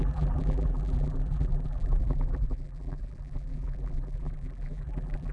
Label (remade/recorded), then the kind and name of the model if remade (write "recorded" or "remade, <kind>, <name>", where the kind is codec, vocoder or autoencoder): remade, vocoder, BigVGAN v2